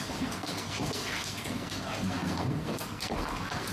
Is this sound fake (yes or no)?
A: yes